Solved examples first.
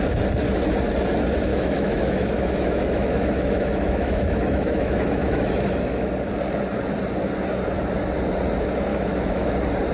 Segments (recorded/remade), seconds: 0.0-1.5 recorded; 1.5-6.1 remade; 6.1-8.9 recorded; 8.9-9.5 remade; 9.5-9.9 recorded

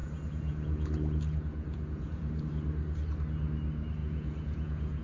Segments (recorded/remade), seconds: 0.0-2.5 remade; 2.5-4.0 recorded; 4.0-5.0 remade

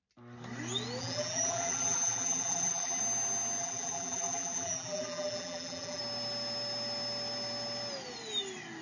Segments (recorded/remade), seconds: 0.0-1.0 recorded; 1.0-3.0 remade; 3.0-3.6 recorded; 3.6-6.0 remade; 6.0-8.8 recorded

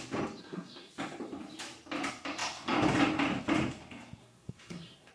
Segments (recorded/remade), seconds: 0.0-0.4 recorded; 0.4-0.9 remade; 0.9-4.2 recorded; 4.2-5.1 remade

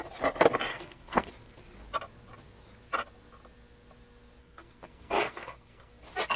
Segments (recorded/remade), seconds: 0.0-0.7 recorded; 0.7-1.3 remade; 1.3-4.4 recorded; 4.4-5.9 remade; 5.9-6.4 recorded

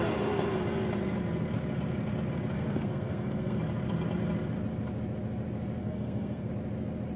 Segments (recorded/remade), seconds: 0.0-2.5 recorded; 2.5-3.6 remade; 3.6-5.8 recorded; 5.8-6.5 remade; 6.5-7.2 recorded